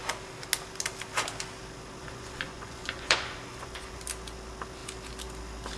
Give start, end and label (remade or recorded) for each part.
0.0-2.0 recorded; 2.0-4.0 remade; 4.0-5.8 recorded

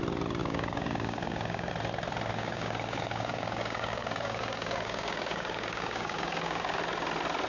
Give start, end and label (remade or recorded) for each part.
0.0-0.4 recorded; 0.4-1.7 remade; 1.7-2.3 recorded; 2.3-6.8 remade; 6.8-7.5 recorded

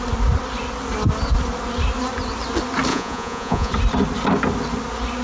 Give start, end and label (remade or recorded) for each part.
0.0-2.9 recorded; 2.9-3.7 remade; 3.7-5.2 recorded